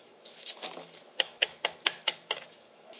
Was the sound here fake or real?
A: fake